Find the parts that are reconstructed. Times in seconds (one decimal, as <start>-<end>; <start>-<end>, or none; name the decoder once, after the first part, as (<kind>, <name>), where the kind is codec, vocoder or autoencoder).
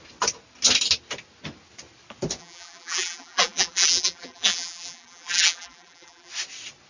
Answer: 2.4-6.3 (vocoder, BigVGAN v2)